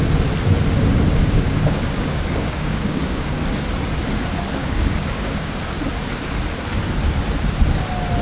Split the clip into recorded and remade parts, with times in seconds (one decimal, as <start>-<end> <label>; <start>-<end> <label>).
0.0-1.2 recorded; 1.2-3.4 remade; 3.4-4.6 recorded; 4.6-5.6 remade; 5.6-8.2 recorded